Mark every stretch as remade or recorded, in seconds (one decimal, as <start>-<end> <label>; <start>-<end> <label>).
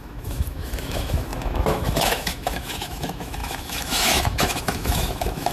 0.0-5.5 remade